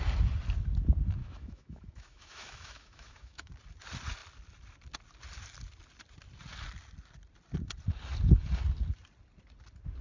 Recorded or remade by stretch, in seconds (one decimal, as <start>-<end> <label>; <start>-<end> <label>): 0.0-1.2 recorded; 1.2-3.5 remade; 3.5-10.0 recorded